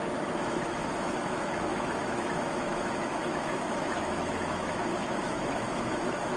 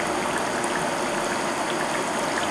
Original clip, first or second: second